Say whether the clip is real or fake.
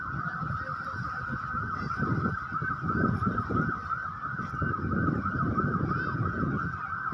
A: real